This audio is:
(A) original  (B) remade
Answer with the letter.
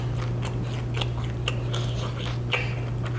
A